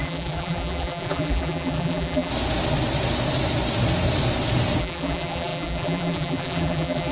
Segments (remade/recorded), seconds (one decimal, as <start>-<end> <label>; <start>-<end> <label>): 0.0-2.3 remade; 2.3-4.8 recorded; 4.8-7.1 remade